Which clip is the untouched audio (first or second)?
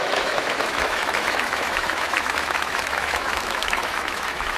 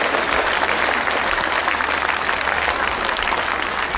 second